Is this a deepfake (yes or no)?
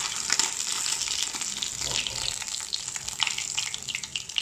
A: no